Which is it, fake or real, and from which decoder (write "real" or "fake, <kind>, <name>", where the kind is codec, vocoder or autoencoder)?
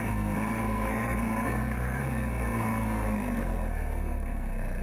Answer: fake, codec, SNAC